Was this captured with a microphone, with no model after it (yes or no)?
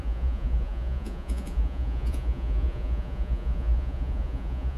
no